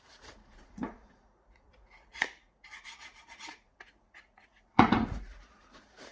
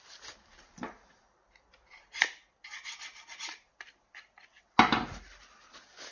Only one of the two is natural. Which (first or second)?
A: second